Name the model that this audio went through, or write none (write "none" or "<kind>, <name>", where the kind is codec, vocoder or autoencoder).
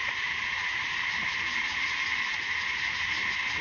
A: none